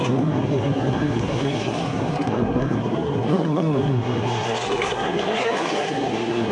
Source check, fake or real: fake